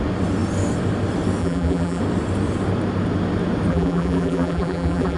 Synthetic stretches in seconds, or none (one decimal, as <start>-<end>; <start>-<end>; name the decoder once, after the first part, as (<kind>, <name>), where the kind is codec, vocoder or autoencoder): 1.4-2.0 (vocoder, BigVGAN v2); 3.7-5.2